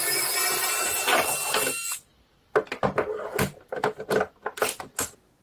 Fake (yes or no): no